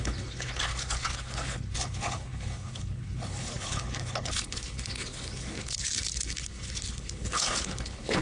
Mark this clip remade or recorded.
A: remade